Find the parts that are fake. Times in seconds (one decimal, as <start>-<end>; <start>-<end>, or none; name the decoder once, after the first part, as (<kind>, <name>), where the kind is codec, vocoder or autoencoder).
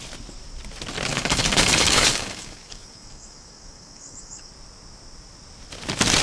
1.1-4.5 (codec, DAC)